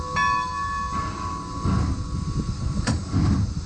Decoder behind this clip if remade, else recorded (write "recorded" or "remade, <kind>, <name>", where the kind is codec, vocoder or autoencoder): recorded